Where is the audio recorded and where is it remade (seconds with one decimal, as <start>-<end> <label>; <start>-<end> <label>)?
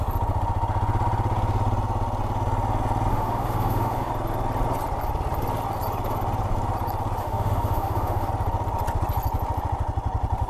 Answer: 0.0-3.1 recorded; 3.1-4.1 remade; 4.1-7.2 recorded; 7.2-8.3 remade; 8.3-10.5 recorded